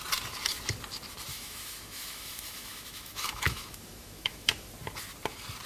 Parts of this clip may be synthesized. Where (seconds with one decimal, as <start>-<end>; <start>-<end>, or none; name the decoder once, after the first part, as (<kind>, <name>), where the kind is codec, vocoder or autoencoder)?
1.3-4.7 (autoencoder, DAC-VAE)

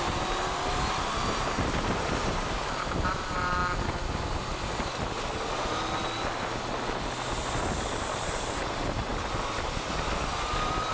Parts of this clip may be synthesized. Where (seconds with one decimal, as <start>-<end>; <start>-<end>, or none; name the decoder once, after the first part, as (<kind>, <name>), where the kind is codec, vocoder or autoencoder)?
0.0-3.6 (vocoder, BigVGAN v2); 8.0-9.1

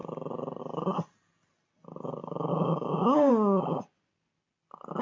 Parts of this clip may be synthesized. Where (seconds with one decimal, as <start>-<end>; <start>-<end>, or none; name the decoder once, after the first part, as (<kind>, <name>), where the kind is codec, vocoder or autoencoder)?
2.2-3.3 (codec, DAC)

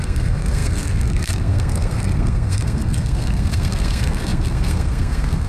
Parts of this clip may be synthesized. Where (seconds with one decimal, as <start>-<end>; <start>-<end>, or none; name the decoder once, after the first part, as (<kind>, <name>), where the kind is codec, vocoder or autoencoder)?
0.0-5.5 (codec, SNAC)

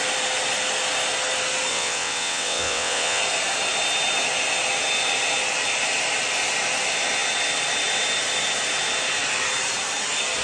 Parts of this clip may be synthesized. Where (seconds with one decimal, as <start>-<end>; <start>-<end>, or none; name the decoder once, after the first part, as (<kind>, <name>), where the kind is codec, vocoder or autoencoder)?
1.7-3.2 (vocoder, WaveNeXt)

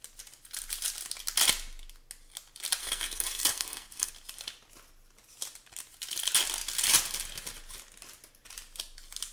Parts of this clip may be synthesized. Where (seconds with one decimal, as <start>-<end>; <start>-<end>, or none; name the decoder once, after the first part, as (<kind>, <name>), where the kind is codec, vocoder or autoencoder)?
2.8-4.1 (codec, SNAC)

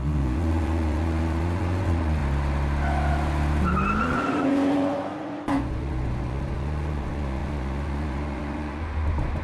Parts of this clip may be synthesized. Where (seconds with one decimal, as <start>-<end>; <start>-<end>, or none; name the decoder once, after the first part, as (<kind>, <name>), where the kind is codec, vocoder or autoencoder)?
0.0-2.2 (vocoder, Vocos); 4.0-9.4

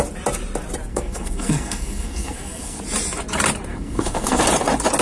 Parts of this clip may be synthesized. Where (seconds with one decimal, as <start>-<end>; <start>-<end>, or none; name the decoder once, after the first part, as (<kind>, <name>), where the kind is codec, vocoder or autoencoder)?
0.9-2.8 (codec, SNAC); 3.7-4.4